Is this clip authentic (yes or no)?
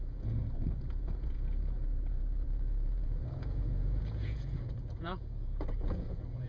no